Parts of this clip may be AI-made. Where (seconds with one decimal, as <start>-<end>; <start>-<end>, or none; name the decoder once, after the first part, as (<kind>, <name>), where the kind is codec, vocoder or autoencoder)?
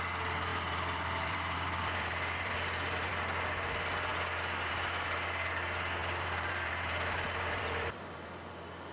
0.5-3.1 (vocoder, BigVGAN v2); 6.0-8.5